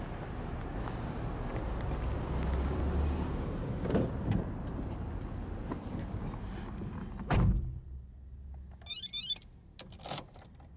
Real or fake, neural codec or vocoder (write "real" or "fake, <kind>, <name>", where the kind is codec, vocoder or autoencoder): real